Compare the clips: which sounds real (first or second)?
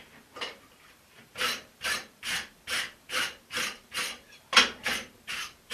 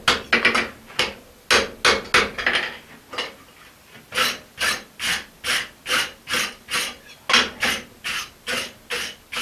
second